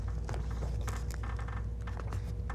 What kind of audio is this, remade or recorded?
recorded